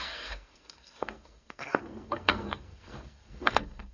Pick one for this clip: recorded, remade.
remade